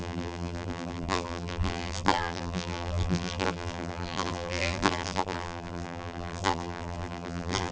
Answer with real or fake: fake